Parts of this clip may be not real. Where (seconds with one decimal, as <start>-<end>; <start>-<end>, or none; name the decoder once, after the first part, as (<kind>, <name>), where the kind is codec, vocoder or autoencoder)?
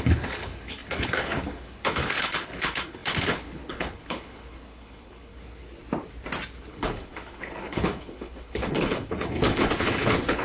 0.0-5.3 (codec, HILCodec); 6.7-10.4